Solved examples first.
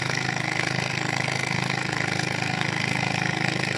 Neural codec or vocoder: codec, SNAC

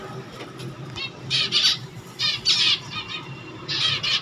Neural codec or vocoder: none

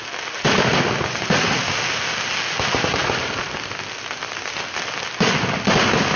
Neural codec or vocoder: none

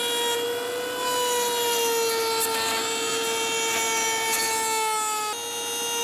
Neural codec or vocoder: none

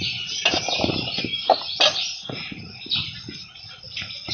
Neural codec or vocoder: none